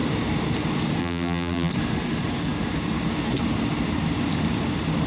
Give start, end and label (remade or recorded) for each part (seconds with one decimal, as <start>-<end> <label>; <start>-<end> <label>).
0.0-1.0 recorded; 1.0-1.7 remade; 1.7-5.1 recorded